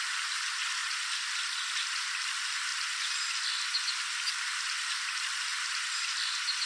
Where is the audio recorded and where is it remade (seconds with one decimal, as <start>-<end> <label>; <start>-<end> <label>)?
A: 0.0-0.8 recorded; 0.8-2.2 remade; 2.2-5.5 recorded; 5.5-6.7 remade